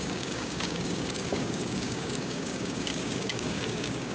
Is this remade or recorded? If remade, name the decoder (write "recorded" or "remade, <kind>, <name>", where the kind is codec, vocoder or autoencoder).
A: remade, codec, DAC